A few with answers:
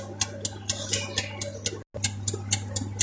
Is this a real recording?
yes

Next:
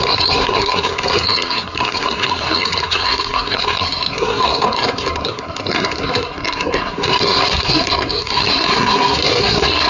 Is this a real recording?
no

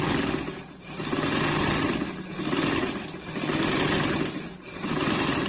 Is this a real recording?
yes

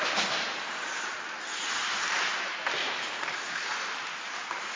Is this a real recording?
yes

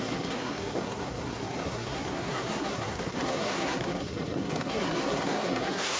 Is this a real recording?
no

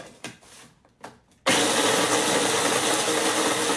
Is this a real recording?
yes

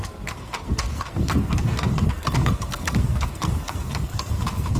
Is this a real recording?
no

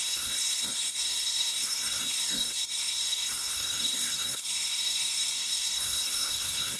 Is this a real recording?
no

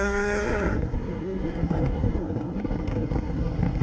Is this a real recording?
no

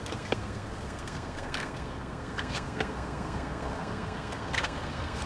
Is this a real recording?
no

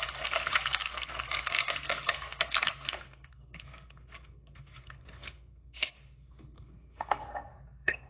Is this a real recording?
no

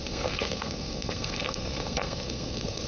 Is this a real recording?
no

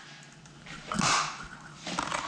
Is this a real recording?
yes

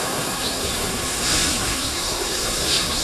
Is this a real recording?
no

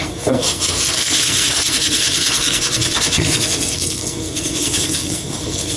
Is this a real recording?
no